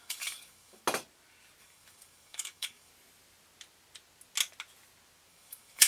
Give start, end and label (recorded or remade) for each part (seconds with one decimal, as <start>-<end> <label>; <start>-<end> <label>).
0.0-0.8 remade; 0.8-1.6 recorded; 1.6-2.9 remade; 2.9-5.3 recorded; 5.3-5.9 remade